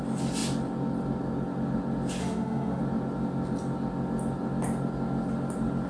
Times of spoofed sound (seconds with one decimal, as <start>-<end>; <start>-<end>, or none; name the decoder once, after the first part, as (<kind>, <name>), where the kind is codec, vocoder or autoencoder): 2.2-2.8 (autoencoder, DAC-VAE)